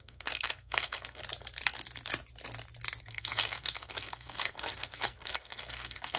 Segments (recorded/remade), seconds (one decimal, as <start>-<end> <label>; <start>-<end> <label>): 0.0-1.2 remade; 1.2-3.0 recorded; 3.0-6.2 remade